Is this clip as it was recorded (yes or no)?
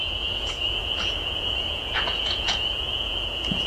no